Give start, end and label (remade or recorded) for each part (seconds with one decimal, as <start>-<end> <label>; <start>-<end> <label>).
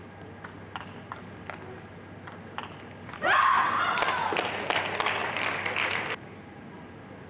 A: 0.0-7.3 recorded